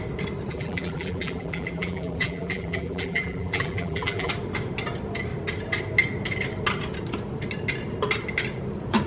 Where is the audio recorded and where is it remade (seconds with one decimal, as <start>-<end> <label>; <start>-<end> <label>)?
0.0-0.5 recorded; 0.5-4.3 remade; 4.3-9.1 recorded